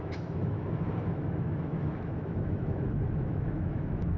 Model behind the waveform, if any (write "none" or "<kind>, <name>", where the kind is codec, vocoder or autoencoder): autoencoder, DAC-VAE